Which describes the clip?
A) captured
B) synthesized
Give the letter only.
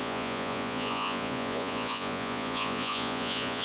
B